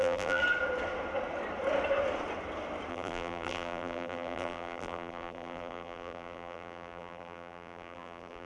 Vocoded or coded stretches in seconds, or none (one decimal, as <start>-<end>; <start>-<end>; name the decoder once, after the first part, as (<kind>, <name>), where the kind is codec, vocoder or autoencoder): 0.0-0.4 (vocoder, BigVGAN v2); 2.9-8.4